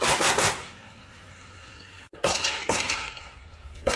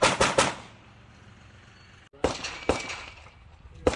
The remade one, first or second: first